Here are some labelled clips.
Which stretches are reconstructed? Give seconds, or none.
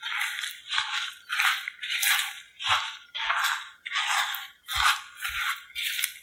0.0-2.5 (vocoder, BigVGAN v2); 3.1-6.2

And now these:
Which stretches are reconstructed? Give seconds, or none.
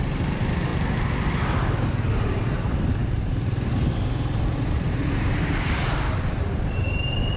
0.0-0.7 (vocoder, BigVGAN v2); 2.5-7.4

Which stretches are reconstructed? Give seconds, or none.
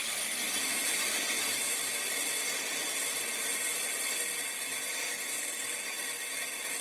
0.0-3.0 (vocoder, BigVGAN v2); 4.7-5.7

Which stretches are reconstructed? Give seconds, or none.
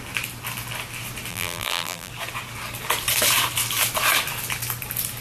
1.3-2.1 (vocoder, BigVGAN v2)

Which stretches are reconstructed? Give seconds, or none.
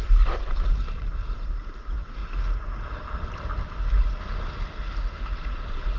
0.0-2.2 (vocoder, BigVGAN v2); 5.0-6.0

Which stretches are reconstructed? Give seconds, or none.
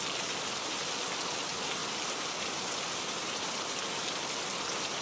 0.0-5.0 (vocoder, BigVGAN v2)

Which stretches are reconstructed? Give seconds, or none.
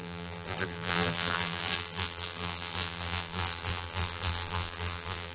0.0-5.3 (vocoder, BigVGAN v2)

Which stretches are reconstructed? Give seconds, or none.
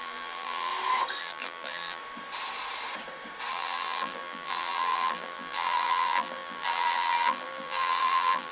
0.0-0.7 (vocoder, BigVGAN v2); 1.2-2.0; 3.5-8.5